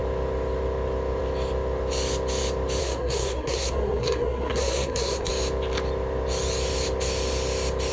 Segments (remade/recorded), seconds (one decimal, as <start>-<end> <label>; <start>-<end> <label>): 0.0-2.8 recorded; 2.8-5.3 remade; 5.3-7.9 recorded